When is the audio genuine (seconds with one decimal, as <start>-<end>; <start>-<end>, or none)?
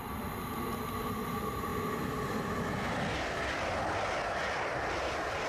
0.0-5.5